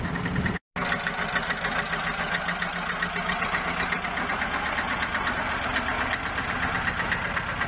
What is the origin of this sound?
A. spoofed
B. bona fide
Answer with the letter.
B